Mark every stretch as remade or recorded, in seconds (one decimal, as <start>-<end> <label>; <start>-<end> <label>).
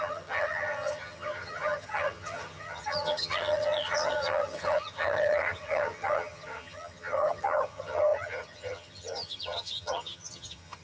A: 0.0-10.8 remade